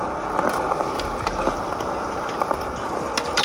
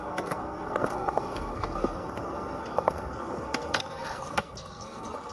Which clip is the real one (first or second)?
first